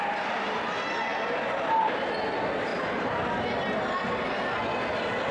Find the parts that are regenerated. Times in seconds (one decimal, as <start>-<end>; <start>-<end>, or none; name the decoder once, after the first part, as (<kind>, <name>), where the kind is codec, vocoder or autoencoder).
1.1-1.8 (vocoder, BigVGAN v2)